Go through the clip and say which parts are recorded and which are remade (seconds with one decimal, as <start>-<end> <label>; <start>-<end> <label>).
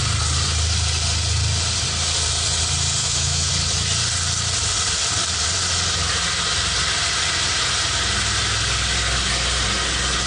0.0-3.0 recorded; 3.0-3.5 remade; 3.5-10.3 recorded